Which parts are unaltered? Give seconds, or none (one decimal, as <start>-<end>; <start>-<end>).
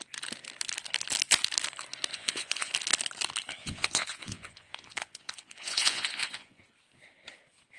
0.0-2.1; 2.7-3.6; 6.6-7.8